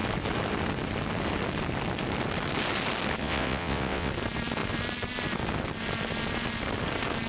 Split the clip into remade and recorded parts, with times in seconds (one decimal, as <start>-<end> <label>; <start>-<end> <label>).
0.0-3.2 recorded; 3.2-4.1 remade; 4.1-7.3 recorded